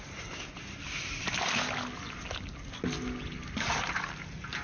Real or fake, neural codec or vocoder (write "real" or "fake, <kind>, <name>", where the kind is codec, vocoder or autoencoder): real